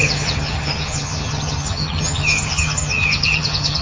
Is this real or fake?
fake